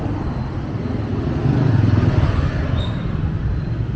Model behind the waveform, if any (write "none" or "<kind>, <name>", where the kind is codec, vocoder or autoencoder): none